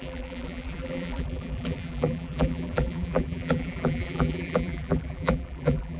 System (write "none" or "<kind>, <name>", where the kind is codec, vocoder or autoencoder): vocoder, BigVGAN v2